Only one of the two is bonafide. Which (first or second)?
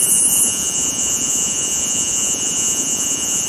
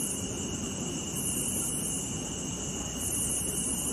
second